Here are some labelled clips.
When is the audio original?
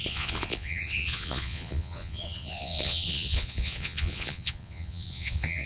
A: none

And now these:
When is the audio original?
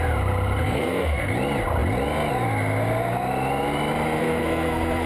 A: 0.0-0.6; 1.3-4.2